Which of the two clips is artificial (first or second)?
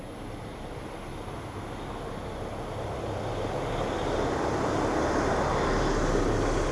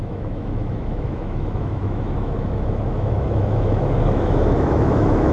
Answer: second